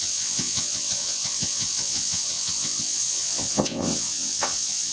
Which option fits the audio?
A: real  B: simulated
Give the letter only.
B